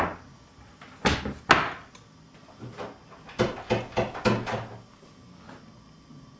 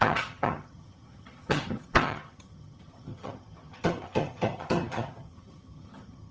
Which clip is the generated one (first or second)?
second